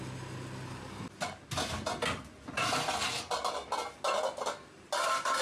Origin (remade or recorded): recorded